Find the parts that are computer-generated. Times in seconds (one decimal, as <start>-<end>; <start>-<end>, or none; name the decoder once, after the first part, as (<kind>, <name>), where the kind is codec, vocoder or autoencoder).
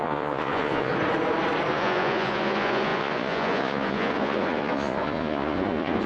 0.0-0.9 (vocoder, Vocos); 1.7-6.1